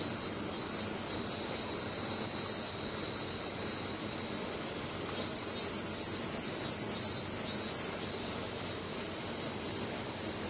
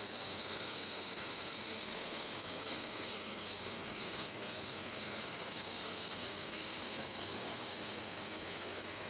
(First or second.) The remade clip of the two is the second